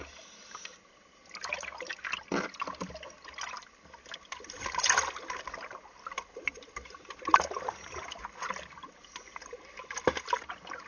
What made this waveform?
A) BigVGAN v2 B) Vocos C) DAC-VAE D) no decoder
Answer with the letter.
D